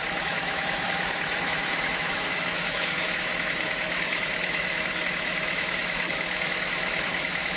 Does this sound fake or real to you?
fake